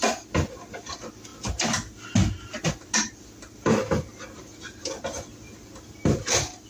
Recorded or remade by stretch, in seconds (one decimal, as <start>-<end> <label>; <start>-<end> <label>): 0.0-6.7 recorded